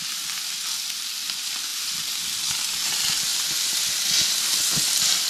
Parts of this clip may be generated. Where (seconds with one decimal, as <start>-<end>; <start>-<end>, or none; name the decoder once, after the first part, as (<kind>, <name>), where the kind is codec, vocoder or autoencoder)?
none